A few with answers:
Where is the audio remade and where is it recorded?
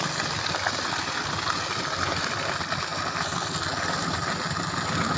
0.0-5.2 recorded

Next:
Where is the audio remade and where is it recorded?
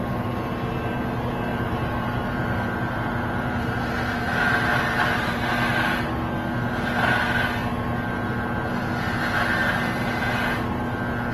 0.0-1.5 recorded; 1.5-5.5 remade; 5.5-11.3 recorded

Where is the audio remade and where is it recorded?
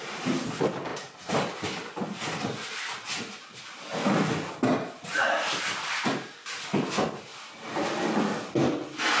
0.0-9.2 recorded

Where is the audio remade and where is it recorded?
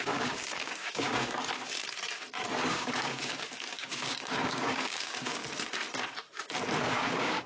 0.0-1.4 remade; 1.4-2.7 recorded; 2.7-5.4 remade; 5.4-6.8 recorded; 6.8-7.5 remade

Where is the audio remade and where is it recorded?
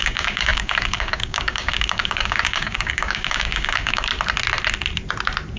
0.0-4.1 remade; 4.1-5.6 recorded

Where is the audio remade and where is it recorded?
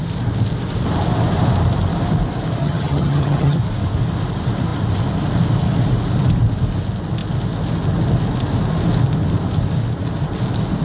0.0-2.6 recorded; 2.6-3.6 remade; 3.6-10.8 recorded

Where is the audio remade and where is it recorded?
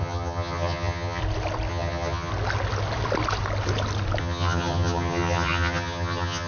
0.0-1.2 remade; 1.2-1.7 recorded; 1.7-2.3 remade; 2.3-4.2 recorded; 4.2-6.5 remade